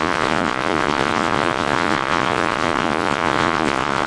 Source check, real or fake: fake